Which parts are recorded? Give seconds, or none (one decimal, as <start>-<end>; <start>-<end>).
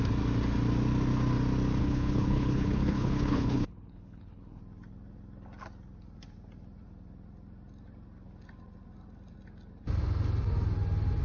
0.0-1.8; 4.6-11.2